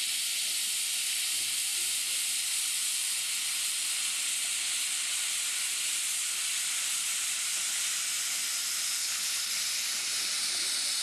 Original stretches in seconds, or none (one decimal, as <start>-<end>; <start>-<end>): 0.0-9.0; 9.5-11.0